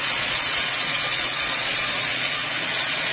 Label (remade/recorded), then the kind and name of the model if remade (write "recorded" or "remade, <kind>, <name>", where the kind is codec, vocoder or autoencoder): remade, vocoder, Vocos